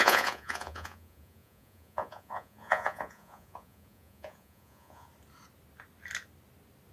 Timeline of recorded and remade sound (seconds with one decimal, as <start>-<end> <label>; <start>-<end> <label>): 0.0-5.1 remade; 5.1-6.9 recorded